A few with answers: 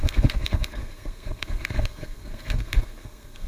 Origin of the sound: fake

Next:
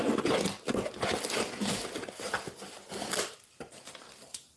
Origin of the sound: real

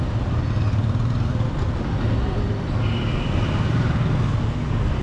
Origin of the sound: real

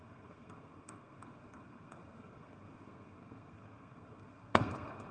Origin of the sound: fake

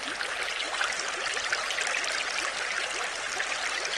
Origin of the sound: real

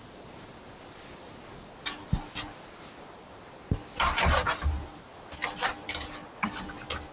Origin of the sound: real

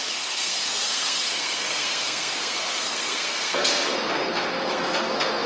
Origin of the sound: fake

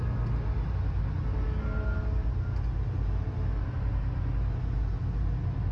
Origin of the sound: real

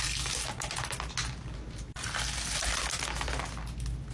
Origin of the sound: real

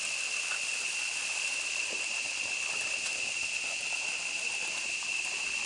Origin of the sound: real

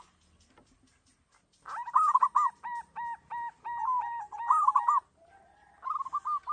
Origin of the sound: real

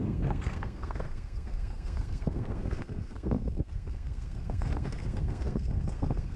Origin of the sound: fake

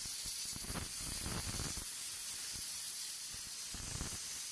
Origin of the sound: real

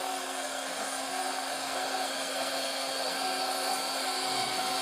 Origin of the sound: fake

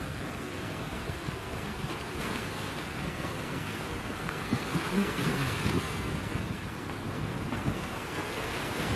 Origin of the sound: fake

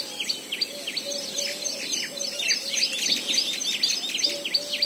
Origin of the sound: real